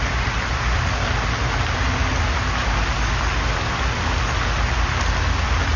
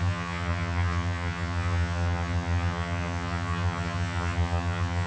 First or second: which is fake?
second